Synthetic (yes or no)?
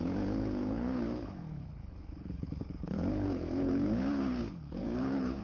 yes